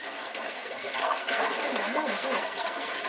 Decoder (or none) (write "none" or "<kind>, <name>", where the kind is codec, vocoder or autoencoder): codec, SNAC